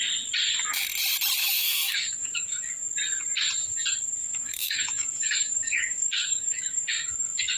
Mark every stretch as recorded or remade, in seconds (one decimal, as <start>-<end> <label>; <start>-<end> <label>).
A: 0.0-1.4 recorded; 1.4-2.7 remade; 2.7-4.2 recorded; 4.2-7.6 remade